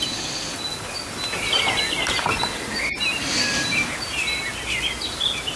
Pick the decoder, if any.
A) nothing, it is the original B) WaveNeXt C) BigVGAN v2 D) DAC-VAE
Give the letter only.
A